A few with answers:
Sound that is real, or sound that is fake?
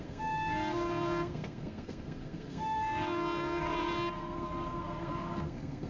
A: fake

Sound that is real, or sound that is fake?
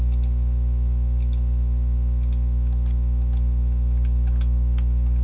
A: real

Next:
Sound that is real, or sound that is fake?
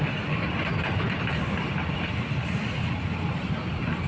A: real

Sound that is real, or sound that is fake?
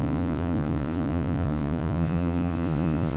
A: fake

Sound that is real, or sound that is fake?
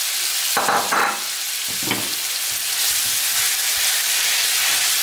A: real